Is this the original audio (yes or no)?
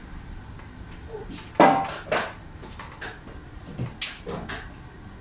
yes